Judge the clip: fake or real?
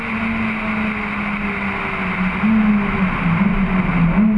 real